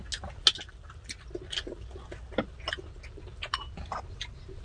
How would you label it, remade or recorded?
recorded